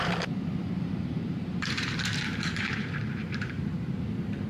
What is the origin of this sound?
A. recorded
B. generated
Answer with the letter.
B